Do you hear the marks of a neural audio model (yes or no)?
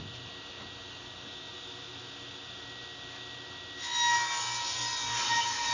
no